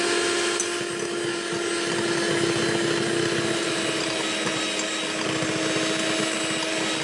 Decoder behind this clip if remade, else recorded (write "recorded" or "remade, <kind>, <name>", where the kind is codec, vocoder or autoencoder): recorded